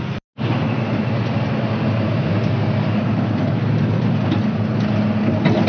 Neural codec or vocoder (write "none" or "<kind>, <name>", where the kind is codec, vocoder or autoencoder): none